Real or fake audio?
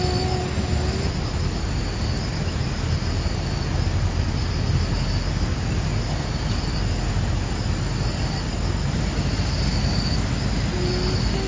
real